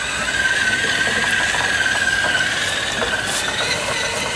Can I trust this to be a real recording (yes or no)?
yes